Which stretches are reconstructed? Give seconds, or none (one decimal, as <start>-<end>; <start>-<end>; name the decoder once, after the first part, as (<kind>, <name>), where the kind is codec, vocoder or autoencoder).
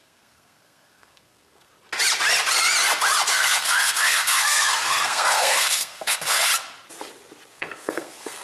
0.0-1.7 (codec, SNAC); 3.3-6.5; 7.5-8.4